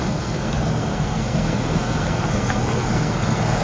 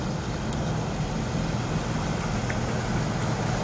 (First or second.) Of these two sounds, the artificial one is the first